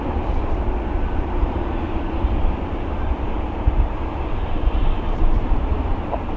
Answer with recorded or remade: remade